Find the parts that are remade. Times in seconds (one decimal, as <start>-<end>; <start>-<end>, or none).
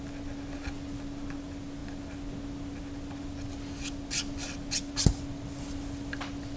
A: none